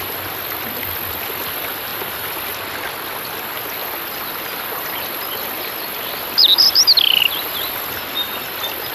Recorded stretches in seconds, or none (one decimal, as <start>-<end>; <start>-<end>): 0.0-8.9